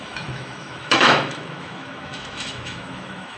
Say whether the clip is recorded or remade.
remade